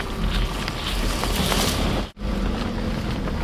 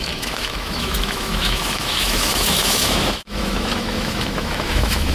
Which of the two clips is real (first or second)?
first